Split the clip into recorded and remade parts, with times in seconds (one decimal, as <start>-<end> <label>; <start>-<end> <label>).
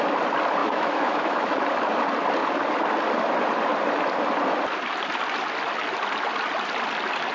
0.0-0.6 recorded; 0.6-1.6 remade; 1.6-7.3 recorded